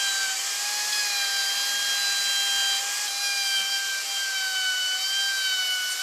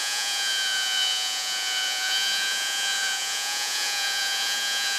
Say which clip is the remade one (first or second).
second